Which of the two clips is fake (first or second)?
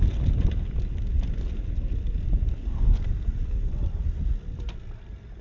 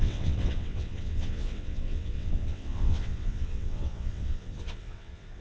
second